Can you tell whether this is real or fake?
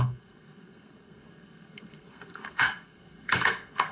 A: fake